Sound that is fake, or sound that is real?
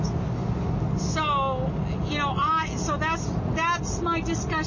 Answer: real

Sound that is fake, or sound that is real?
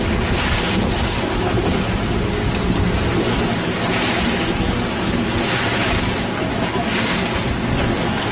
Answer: real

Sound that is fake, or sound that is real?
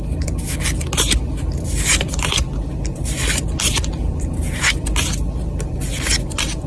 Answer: real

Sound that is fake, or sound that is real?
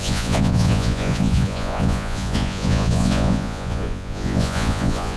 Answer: fake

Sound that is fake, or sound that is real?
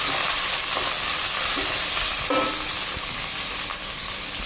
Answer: real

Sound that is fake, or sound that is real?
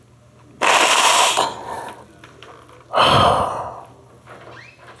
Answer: real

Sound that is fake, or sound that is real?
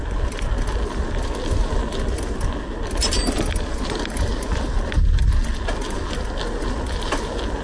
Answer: real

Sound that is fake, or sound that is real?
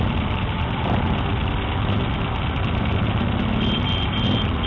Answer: real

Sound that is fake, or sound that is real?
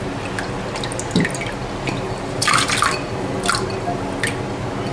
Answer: real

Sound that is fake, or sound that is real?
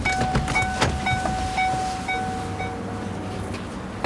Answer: real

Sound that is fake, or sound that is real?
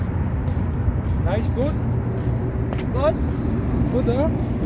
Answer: real